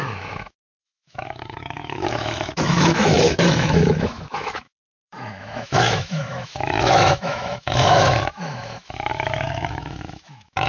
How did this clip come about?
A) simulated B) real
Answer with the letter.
A